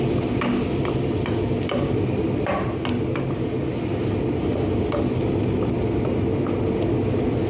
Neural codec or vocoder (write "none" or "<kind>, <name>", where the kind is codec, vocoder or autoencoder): none